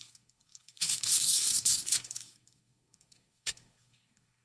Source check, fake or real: fake